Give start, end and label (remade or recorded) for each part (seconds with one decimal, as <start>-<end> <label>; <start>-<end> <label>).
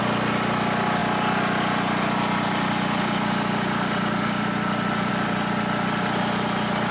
0.0-6.9 recorded